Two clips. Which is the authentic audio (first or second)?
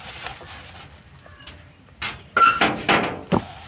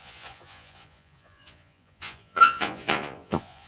first